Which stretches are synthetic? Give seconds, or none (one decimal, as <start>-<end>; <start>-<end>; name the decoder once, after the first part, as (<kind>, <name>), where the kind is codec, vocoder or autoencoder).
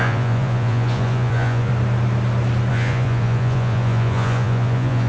0.0-1.7 (vocoder, Vocos); 2.7-5.1